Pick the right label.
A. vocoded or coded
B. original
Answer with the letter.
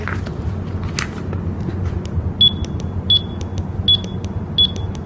B